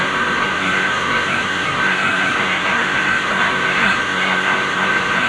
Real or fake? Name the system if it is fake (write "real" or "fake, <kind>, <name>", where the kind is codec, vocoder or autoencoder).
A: fake, codec, SNAC